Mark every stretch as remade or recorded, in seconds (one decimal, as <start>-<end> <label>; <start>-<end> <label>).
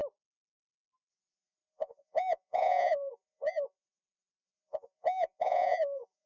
0.0-1.1 recorded; 1.1-6.3 remade